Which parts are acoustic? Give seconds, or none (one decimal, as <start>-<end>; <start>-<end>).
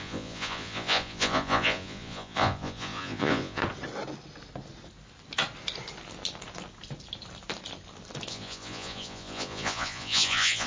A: 3.6-8.3